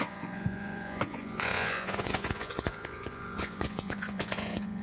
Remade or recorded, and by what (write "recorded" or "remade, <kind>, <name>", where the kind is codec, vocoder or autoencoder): remade, vocoder, Vocos